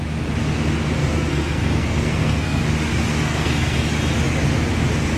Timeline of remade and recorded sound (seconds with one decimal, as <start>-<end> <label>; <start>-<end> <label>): 0.0-1.0 recorded; 1.0-2.6 remade; 2.6-3.1 recorded; 3.1-3.8 remade; 3.8-5.2 recorded